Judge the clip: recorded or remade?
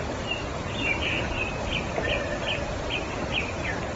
recorded